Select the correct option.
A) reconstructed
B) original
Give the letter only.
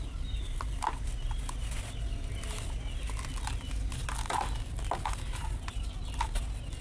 B